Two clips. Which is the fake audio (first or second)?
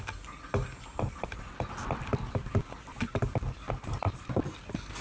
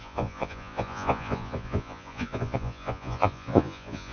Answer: second